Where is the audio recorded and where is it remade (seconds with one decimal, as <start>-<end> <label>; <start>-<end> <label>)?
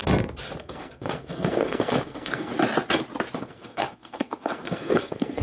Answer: 0.0-0.6 recorded; 0.6-2.5 remade; 2.5-3.4 recorded; 3.4-5.4 remade